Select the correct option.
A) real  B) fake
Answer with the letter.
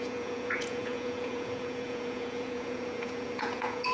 B